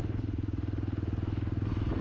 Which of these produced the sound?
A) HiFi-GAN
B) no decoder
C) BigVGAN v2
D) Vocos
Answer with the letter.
B